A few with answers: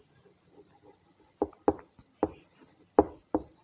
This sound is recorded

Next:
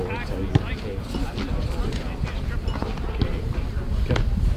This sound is recorded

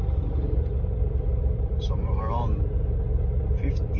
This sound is remade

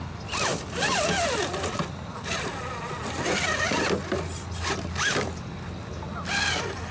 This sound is recorded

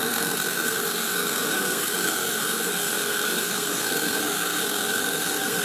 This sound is remade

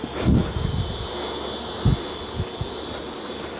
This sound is recorded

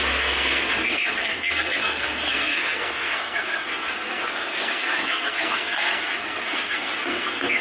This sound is remade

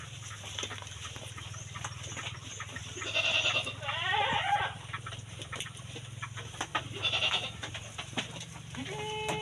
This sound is recorded